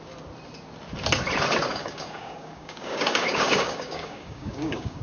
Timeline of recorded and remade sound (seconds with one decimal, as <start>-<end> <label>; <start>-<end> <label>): 0.0-1.7 recorded; 1.7-5.0 remade